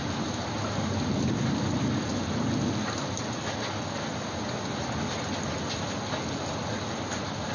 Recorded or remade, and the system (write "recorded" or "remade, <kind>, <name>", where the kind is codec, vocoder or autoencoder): recorded